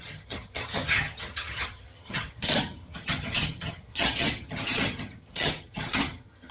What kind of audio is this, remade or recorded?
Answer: remade